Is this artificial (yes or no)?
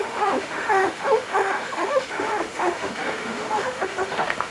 yes